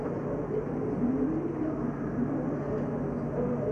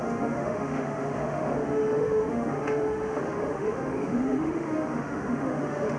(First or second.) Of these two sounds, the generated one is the second